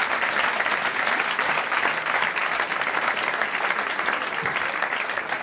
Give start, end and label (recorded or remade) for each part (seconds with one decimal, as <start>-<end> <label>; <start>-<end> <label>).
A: 0.0-5.4 recorded